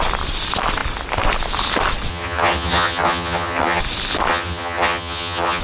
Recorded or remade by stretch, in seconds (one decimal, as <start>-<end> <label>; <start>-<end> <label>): 0.0-2.1 recorded; 2.1-3.8 remade; 3.8-4.3 recorded; 4.3-5.6 remade